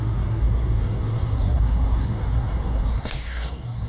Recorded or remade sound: remade